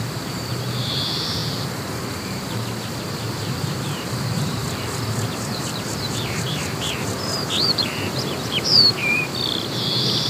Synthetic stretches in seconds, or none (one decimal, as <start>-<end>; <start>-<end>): 0.0-1.4; 2.2-10.3